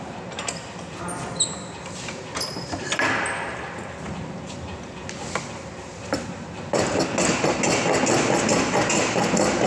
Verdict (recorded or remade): recorded